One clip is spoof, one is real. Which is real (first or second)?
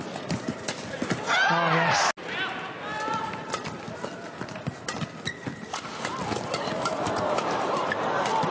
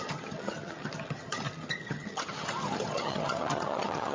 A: first